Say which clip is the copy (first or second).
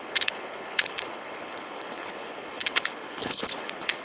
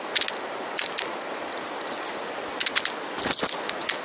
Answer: first